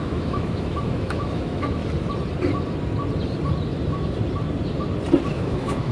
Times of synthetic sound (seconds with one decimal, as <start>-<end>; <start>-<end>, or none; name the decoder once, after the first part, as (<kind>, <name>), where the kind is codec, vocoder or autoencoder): 0.0-1.8 (autoencoder, DAC-VAE); 5.3-5.9